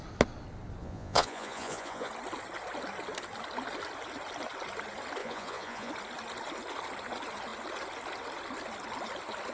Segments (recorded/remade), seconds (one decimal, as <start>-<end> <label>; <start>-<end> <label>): 0.0-0.8 recorded; 0.8-2.1 remade; 2.1-5.2 recorded; 5.2-5.9 remade; 5.9-9.5 recorded